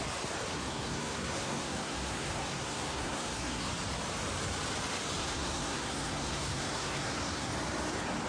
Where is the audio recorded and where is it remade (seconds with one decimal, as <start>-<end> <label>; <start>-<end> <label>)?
0.0-0.5 recorded; 0.5-3.7 remade; 3.7-5.2 recorded; 5.2-7.5 remade; 7.5-8.3 recorded